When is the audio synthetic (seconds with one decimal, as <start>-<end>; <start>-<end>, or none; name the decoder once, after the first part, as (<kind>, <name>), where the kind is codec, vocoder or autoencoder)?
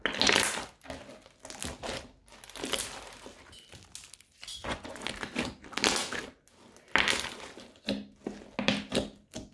4.5-5.1 (vocoder, Vocos)